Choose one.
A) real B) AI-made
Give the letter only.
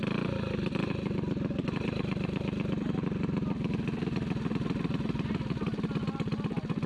A